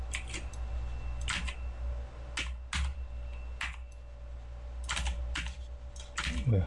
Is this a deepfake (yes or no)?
no